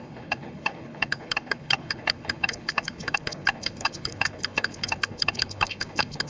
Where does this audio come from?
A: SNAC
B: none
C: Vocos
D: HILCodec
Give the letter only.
D